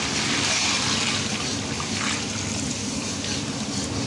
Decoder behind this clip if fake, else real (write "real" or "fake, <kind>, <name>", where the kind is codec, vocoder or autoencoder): real